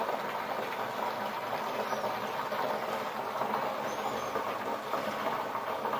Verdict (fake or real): real